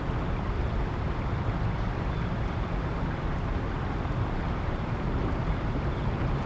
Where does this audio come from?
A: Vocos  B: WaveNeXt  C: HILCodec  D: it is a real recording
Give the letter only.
D